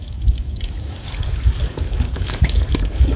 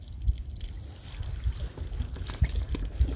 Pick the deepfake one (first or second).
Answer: first